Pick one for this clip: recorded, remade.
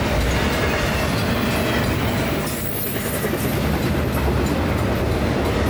recorded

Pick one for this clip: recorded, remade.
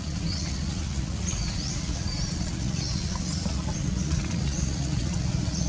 remade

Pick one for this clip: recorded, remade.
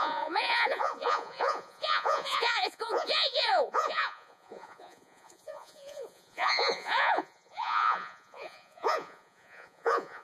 remade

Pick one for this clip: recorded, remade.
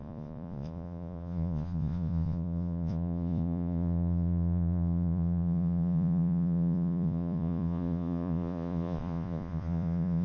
remade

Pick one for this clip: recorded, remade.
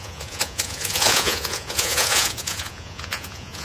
remade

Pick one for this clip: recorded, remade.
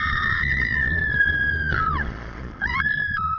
remade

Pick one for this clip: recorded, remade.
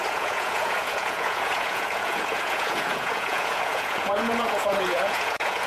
remade